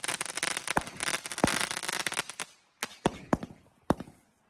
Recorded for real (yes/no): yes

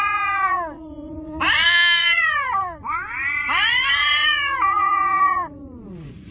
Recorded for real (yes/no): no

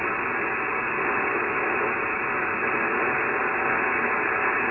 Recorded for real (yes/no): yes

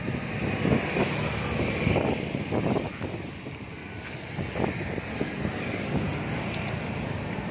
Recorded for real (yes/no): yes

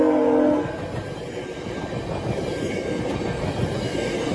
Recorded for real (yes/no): yes